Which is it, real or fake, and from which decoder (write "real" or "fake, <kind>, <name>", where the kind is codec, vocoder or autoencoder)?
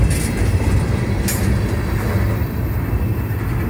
real